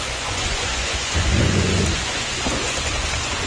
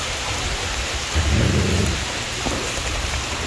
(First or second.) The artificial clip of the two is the first